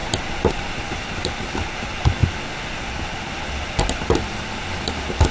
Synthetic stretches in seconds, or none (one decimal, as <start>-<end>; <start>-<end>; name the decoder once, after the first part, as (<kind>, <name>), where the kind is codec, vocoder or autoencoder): none